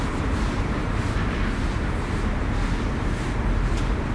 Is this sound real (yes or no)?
yes